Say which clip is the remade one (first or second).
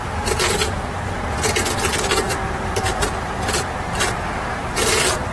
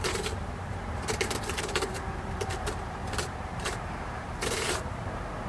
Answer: second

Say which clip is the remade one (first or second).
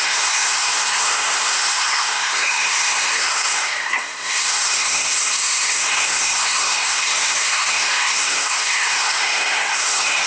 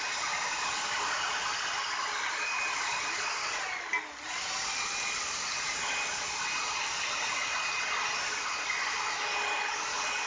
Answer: first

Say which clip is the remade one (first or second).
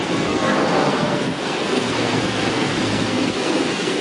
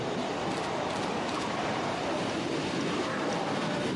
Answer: first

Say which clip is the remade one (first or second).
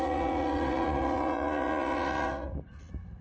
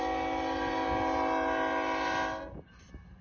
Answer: first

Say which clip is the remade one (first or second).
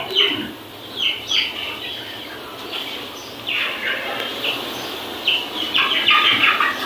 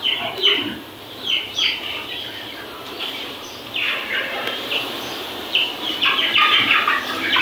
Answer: second